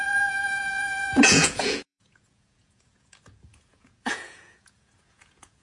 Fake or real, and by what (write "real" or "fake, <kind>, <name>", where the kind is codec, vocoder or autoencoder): fake, vocoder, Vocos